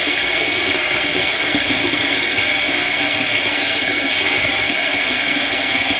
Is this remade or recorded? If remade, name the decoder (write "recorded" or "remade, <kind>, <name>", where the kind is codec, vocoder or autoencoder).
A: remade, codec, SNAC